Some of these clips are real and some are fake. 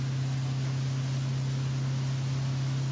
real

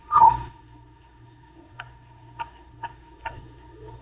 fake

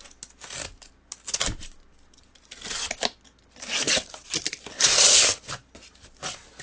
real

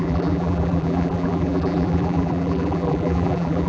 fake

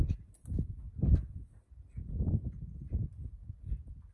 real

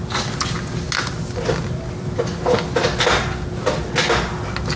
real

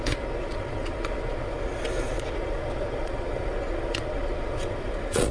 fake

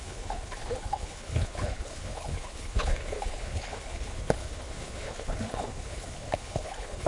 fake